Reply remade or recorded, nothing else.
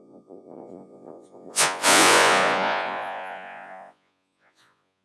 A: remade